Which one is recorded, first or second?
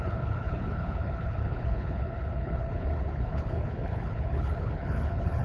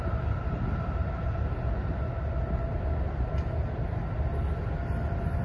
second